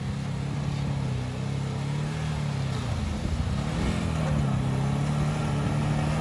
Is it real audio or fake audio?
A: real